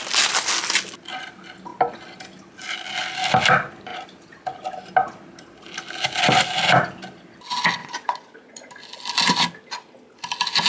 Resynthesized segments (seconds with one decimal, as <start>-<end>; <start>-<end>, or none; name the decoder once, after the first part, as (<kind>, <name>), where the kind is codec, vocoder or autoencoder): 7.8-8.7 (vocoder, Vocos)